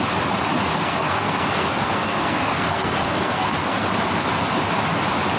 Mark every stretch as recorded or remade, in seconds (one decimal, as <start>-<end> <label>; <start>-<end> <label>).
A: 0.0-0.7 recorded; 0.7-3.9 remade; 3.9-5.4 recorded

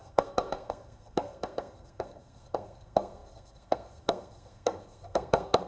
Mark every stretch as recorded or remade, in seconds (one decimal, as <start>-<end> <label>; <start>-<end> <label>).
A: 0.0-5.7 remade

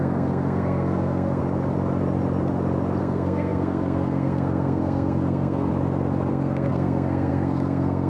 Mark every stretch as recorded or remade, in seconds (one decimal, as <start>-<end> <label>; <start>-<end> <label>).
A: 0.0-1.4 remade; 1.4-3.0 recorded; 3.0-5.7 remade; 5.7-6.3 recorded; 6.3-8.1 remade

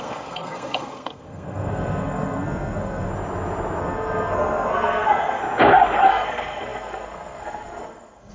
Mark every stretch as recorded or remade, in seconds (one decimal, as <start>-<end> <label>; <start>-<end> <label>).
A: 0.0-3.1 remade; 3.1-3.8 recorded; 3.8-5.4 remade; 5.4-6.1 recorded; 6.1-8.3 remade